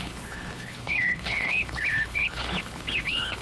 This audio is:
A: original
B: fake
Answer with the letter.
B